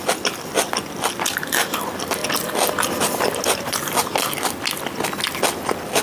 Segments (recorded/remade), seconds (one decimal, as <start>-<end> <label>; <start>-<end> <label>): 0.0-6.0 recorded